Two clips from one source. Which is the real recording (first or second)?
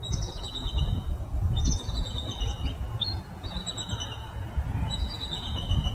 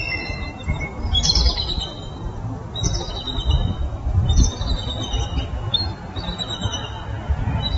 second